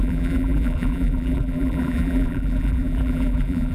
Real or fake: fake